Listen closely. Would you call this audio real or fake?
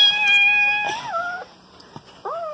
real